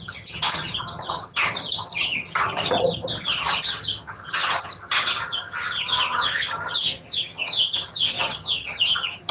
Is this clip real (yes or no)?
no